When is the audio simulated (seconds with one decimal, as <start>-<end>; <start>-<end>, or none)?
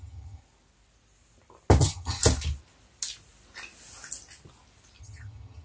0.0-0.4; 1.8-2.2; 5.0-5.6